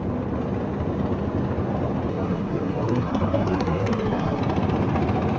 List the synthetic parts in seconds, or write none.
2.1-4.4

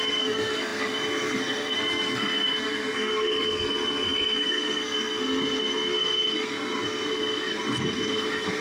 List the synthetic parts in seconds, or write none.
0.0-8.6

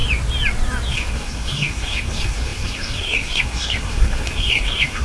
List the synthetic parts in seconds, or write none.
0.9-5.0

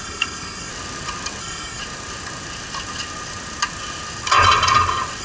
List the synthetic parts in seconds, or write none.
0.0-0.7; 1.4-1.8

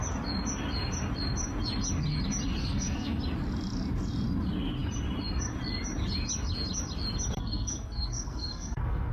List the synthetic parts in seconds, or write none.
2.6-3.2; 7.3-9.1

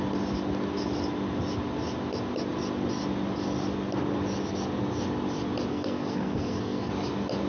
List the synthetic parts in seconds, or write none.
5.7-6.9